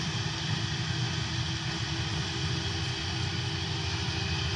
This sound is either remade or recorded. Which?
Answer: recorded